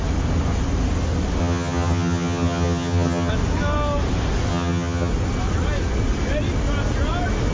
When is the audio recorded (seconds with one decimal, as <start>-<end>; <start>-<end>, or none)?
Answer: 0.0-1.4; 3.3-4.5; 5.1-7.5